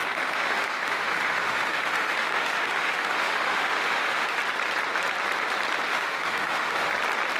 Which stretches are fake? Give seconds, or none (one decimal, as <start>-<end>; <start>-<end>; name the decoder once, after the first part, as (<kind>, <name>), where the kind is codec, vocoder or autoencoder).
0.0-4.4 (autoencoder, DAC-VAE); 5.9-6.9